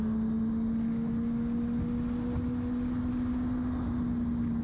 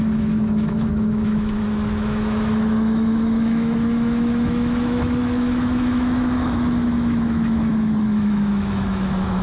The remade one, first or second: second